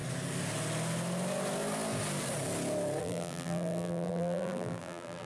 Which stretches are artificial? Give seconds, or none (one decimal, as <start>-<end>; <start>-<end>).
3.0-5.3